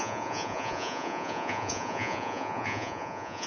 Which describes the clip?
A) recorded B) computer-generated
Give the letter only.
B